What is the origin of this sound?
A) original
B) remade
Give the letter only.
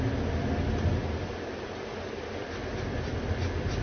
A